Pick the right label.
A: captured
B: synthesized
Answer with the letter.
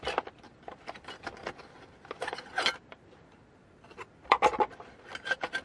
B